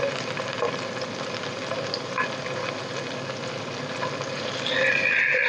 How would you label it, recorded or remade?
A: recorded